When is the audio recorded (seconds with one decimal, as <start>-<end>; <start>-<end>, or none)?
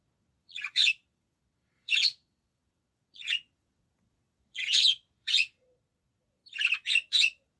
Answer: 6.4-7.1